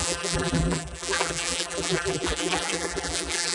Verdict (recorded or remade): remade